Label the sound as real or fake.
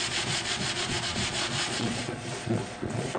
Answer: fake